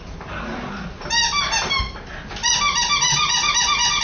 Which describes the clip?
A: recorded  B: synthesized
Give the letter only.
A